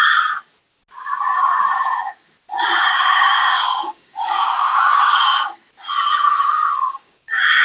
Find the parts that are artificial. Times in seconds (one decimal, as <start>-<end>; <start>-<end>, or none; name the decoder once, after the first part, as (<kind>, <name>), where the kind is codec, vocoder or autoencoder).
2.9-5.1 (codec, DAC); 6.7-7.6